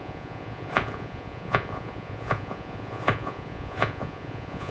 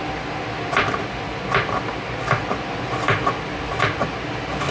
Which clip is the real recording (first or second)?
second